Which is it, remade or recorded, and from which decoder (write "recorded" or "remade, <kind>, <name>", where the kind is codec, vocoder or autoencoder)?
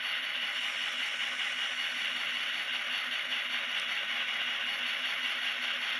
recorded